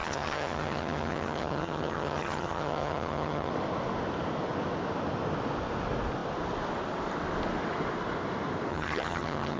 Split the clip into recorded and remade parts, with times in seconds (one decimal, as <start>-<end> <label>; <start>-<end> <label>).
0.0-3.5 remade; 3.5-8.7 recorded; 8.7-9.6 remade